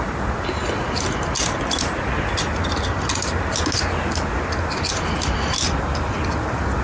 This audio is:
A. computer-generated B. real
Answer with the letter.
B